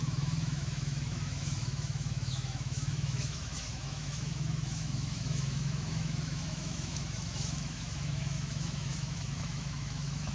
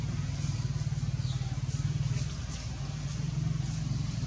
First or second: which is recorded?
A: second